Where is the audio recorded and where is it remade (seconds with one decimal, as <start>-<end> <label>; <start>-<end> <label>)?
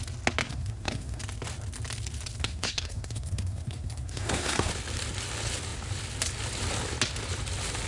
0.0-0.4 recorded; 0.4-1.2 remade; 1.2-2.4 recorded; 2.4-4.7 remade; 4.7-7.9 recorded